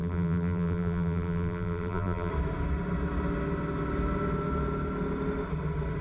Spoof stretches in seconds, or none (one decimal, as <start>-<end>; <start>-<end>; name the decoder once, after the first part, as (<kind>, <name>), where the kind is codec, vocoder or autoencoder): 0.0-2.3 (vocoder, BigVGAN v2)